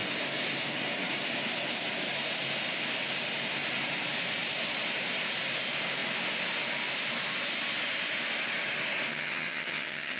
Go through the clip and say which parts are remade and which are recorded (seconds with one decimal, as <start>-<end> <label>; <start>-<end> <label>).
0.0-9.1 recorded; 9.1-10.2 remade